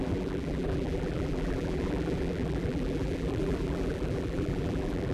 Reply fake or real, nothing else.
fake